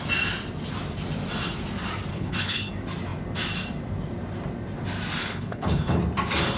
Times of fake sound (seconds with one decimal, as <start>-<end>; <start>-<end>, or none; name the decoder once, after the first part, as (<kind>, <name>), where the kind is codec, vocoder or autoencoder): 2.1-2.7 (codec, HILCodec); 5.2-6.0